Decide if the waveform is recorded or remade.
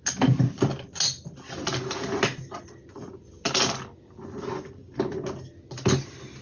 recorded